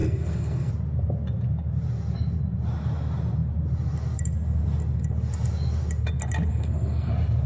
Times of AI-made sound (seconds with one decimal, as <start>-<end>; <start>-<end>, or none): 0.0-0.7; 6.5-7.1